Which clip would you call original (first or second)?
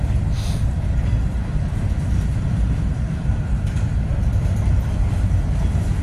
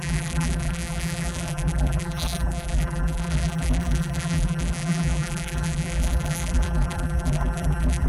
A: first